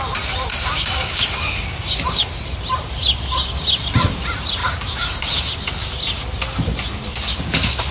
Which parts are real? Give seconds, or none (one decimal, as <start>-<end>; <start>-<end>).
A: 0.0-0.5; 2.2-4.6; 5.4-7.1